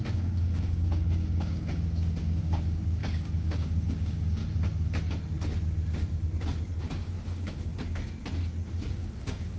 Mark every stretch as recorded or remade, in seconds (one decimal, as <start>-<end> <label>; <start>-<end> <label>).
0.0-4.4 remade; 4.4-6.8 recorded; 6.8-7.7 remade; 7.7-8.9 recorded; 8.9-9.6 remade